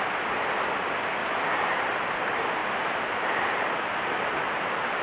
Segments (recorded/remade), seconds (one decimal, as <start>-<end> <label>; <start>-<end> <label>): 0.0-1.2 recorded; 1.2-1.8 remade; 1.8-2.6 recorded; 2.6-5.0 remade